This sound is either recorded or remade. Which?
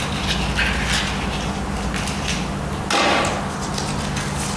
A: recorded